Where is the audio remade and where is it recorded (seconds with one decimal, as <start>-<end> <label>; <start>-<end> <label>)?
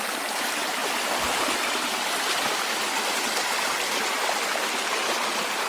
0.0-5.7 recorded